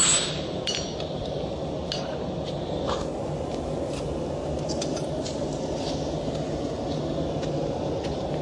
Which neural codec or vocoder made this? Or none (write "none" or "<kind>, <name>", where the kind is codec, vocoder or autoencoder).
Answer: none